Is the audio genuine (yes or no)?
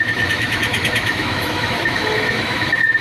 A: no